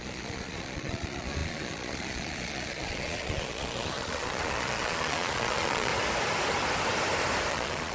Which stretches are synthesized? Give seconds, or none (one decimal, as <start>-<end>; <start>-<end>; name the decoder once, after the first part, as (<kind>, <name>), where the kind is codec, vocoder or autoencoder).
0.0-5.9 (vocoder, Vocos); 7.5-7.9